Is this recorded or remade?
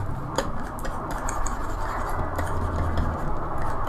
recorded